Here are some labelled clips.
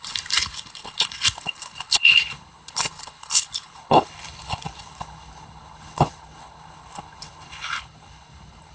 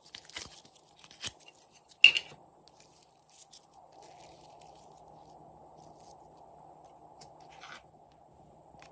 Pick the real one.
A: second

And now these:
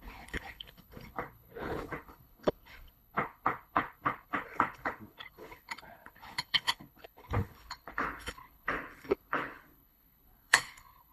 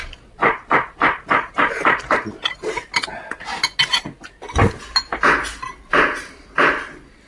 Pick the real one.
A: second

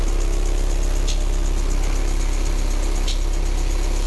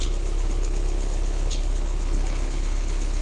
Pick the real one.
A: first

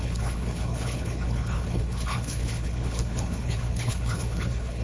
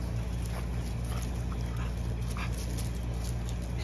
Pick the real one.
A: second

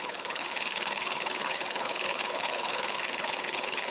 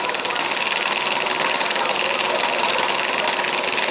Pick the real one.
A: second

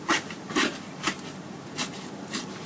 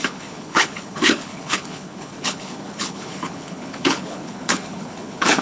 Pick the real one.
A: first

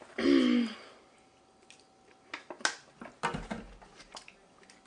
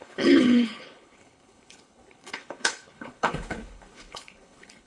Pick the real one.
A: first